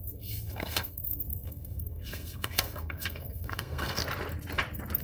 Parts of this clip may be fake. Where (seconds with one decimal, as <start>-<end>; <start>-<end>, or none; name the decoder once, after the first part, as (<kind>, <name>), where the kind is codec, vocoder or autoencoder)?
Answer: 0.0-4.0 (codec, SNAC)